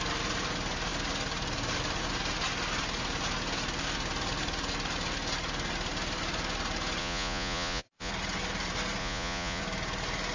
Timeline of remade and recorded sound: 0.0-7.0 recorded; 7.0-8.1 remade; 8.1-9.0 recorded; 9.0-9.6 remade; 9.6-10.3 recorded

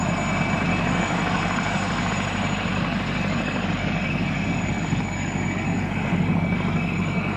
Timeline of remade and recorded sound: 0.0-0.7 recorded; 0.7-2.1 remade; 2.1-2.7 recorded; 2.7-7.4 remade

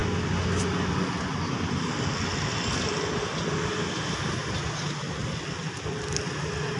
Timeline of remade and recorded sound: 0.0-6.8 recorded

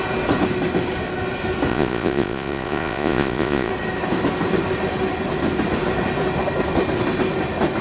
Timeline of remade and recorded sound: 0.0-1.7 recorded; 1.7-3.7 remade; 3.7-7.8 recorded

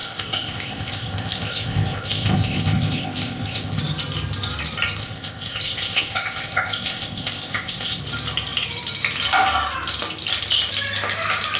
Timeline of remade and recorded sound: 0.0-3.8 remade; 3.8-5.0 recorded; 5.0-8.0 remade; 8.0-11.6 recorded

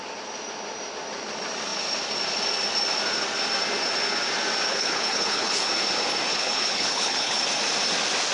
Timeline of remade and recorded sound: 0.0-4.7 recorded; 4.7-5.7 remade; 5.7-6.3 recorded; 6.3-7.4 remade; 7.4-8.3 recorded